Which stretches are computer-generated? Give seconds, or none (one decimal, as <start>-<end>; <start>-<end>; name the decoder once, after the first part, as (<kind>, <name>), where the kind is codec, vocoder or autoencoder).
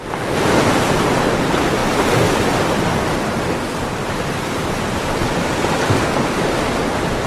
0.0-5.2 (vocoder, BigVGAN v2); 6.5-7.3